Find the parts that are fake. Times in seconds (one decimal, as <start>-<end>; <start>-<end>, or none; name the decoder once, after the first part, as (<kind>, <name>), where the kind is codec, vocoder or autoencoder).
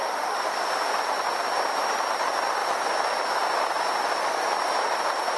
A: 0.0-0.5 (autoencoder, DAC-VAE)